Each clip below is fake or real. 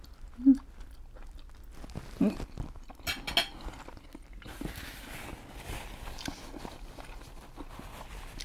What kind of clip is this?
real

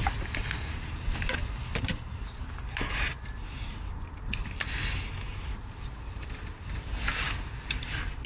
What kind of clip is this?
real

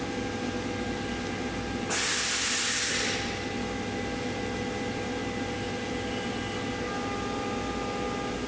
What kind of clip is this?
real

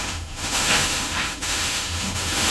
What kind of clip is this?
fake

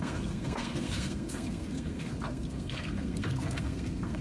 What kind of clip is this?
fake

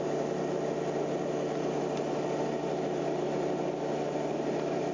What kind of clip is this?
real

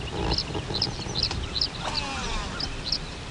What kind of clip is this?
real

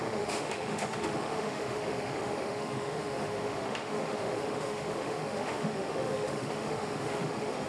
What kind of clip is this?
fake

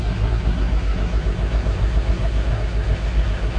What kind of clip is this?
fake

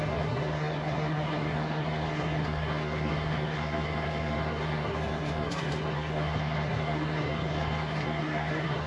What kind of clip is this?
fake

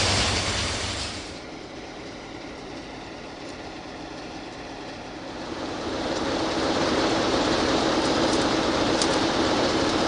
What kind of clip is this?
fake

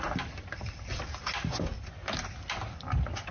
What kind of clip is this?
real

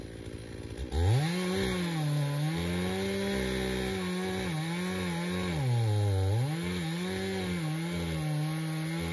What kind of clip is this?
real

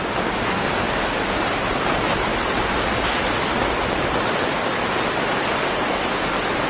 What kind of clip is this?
real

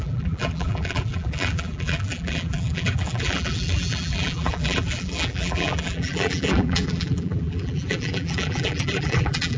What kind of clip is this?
fake